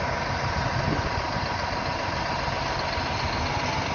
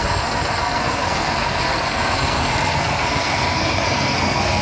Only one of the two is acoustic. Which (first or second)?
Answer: first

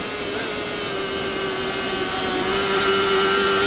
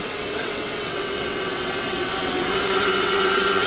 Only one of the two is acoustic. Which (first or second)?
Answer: first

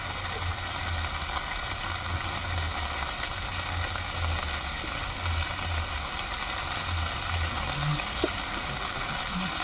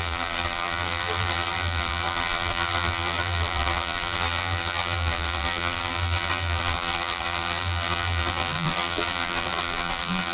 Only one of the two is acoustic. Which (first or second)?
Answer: first